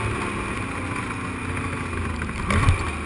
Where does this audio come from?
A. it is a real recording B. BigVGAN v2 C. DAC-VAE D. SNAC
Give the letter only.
A